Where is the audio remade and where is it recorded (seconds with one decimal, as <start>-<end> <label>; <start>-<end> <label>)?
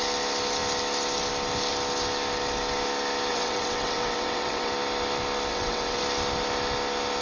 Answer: 0.0-3.3 recorded; 3.3-4.7 remade; 4.7-5.5 recorded; 5.5-6.0 remade; 6.0-7.2 recorded